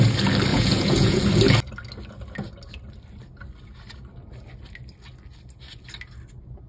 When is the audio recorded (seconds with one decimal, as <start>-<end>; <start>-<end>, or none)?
0.0-0.5; 1.2-6.7